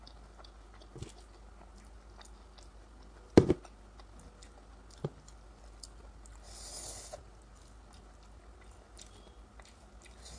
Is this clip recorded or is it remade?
recorded